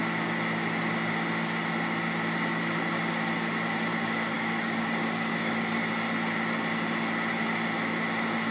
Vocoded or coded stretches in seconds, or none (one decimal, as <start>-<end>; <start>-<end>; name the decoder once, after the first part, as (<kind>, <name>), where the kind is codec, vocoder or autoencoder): 3.9-5.9 (codec, DAC)